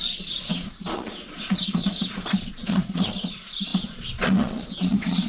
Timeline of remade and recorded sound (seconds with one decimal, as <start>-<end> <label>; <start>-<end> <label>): 0.0-5.3 remade